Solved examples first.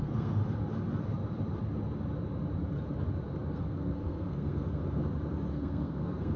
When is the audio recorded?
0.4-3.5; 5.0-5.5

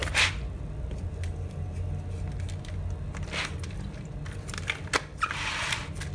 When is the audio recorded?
0.0-6.1

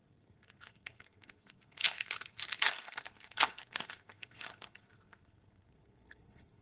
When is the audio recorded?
none

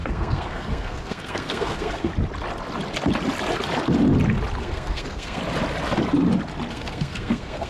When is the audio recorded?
2.1-4.6; 5.4-6.7

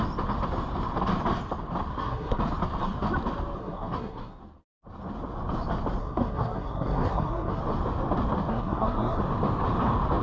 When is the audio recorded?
0.0-1.9; 2.4-3.6; 4.4-6.0; 7.6-8.5; 9.2-10.2

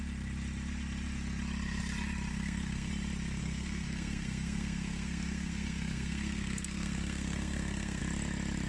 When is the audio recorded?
0.0-2.3; 2.9-3.4; 8.0-8.7